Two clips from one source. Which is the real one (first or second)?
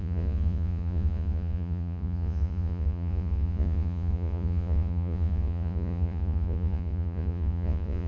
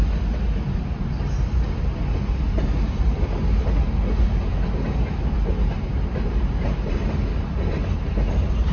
second